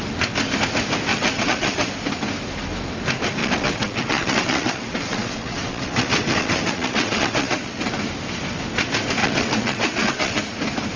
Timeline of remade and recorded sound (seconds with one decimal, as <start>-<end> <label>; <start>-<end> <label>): 0.0-1.1 recorded; 1.1-1.9 remade; 1.9-3.4 recorded; 3.4-7.9 remade; 7.9-9.2 recorded; 9.2-10.4 remade; 10.4-11.0 recorded